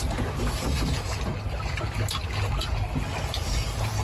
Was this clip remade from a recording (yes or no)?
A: no